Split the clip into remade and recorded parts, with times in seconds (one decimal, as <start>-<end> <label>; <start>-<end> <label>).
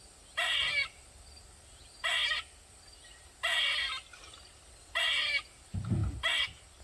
0.0-6.8 recorded